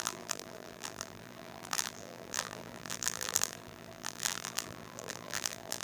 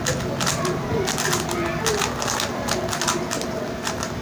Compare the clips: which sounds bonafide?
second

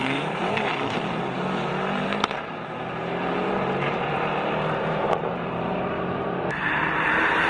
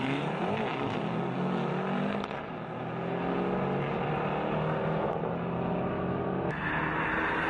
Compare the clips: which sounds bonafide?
second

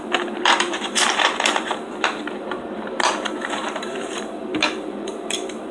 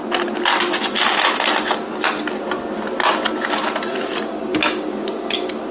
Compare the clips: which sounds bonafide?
second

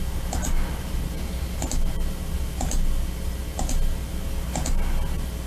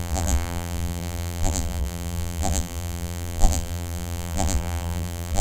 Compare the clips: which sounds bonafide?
first